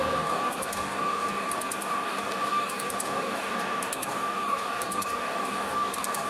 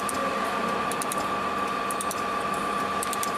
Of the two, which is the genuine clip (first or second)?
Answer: second